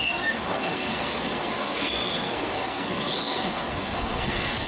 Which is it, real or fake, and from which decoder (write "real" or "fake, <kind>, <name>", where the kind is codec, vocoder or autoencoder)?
fake, codec, SNAC